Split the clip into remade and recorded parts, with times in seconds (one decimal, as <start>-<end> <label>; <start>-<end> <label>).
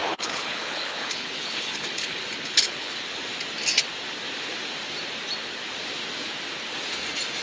0.0-3.0 remade; 3.0-7.4 recorded